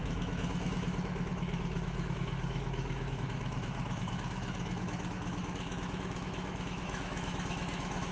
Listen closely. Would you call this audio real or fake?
fake